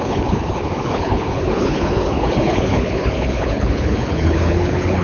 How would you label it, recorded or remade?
remade